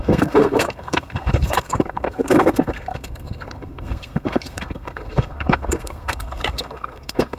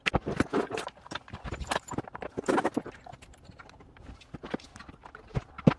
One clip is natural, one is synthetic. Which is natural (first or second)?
second